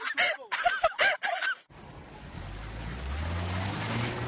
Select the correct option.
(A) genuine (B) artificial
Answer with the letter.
A